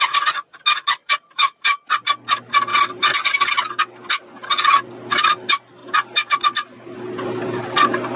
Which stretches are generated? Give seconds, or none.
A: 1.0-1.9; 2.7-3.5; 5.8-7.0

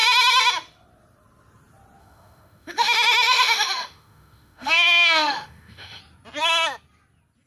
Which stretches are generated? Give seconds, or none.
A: 2.0-6.0

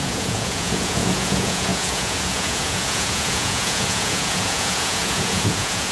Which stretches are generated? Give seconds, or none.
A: 0.0-5.9